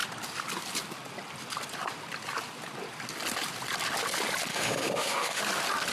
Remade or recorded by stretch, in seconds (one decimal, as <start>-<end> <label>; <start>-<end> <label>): 0.0-4.5 recorded; 4.5-5.4 remade; 5.4-5.9 recorded